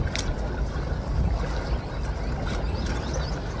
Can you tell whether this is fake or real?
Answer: real